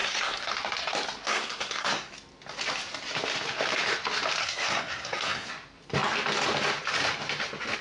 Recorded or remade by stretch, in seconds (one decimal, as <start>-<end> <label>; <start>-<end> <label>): 0.0-0.5 remade; 0.5-1.3 recorded; 1.3-2.1 remade; 2.1-4.4 recorded; 4.4-5.5 remade; 5.5-7.8 recorded